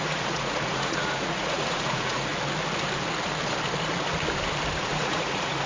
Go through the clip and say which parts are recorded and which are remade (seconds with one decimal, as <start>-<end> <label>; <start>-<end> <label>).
0.0-2.3 remade; 2.3-4.8 recorded; 4.8-5.7 remade